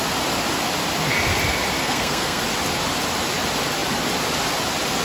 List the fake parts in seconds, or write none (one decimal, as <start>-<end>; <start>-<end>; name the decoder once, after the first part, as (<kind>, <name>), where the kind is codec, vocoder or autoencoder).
1.8-2.4 (codec, SNAC)

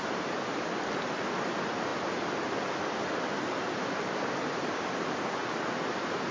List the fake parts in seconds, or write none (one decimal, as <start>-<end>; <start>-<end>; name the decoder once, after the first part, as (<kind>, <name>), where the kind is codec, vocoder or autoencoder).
0.0-5.4 (vocoder, BigVGAN v2)

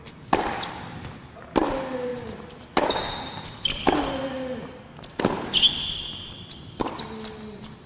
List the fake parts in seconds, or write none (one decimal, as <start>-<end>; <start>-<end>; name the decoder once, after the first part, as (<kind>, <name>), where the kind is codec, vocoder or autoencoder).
none

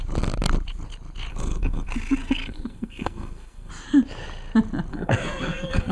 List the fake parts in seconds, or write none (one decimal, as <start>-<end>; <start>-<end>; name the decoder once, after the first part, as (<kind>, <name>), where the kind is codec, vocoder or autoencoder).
1.3-3.7 (codec, SNAC); 4.9-5.9

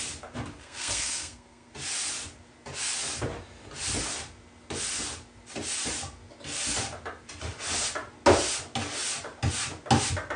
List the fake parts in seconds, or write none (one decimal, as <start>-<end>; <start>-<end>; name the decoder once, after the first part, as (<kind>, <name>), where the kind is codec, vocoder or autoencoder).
0.6-1.7 (codec, SNAC)

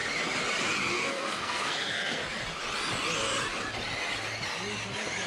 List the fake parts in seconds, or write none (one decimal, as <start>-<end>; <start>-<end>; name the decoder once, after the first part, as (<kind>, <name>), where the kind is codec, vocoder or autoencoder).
0.9-2.2 (codec, SNAC)

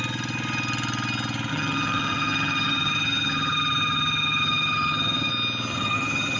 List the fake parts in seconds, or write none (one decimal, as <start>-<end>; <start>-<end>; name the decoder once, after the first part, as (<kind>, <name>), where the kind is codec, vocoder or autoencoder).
1.5-5.3 (vocoder, HiFi-GAN); 5.7-6.4

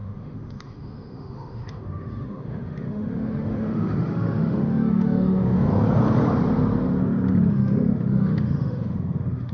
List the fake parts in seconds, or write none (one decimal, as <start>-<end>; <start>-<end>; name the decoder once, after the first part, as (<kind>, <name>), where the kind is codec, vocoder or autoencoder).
0.0-5.7 (autoencoder, DAC-VAE); 7.5-9.5